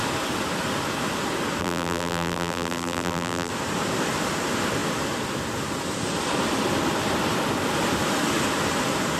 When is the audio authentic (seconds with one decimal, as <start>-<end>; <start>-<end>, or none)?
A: 0.0-1.6; 3.5-9.2